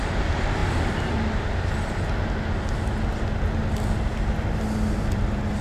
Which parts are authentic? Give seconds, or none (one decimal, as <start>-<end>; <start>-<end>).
0.0-5.6